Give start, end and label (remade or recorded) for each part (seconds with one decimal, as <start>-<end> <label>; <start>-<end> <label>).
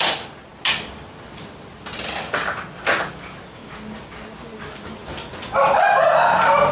0.0-6.7 recorded